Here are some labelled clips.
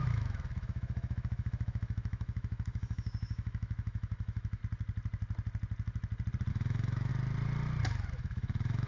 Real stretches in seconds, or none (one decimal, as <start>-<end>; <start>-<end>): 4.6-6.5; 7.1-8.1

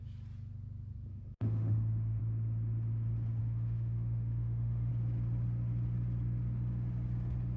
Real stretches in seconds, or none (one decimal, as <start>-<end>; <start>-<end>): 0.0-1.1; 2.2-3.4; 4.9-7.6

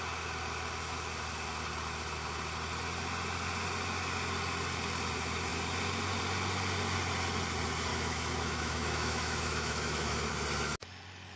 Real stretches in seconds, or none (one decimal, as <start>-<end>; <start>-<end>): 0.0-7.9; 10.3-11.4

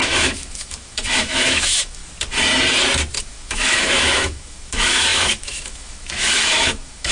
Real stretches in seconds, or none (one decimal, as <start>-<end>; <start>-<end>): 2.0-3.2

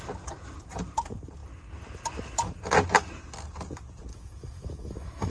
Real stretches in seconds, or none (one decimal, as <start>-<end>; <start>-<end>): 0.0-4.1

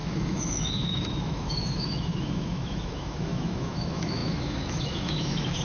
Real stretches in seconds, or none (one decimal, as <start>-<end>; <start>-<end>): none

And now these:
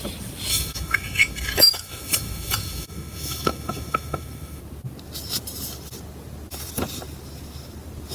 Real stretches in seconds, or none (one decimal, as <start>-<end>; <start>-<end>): 0.0-0.5; 4.6-8.1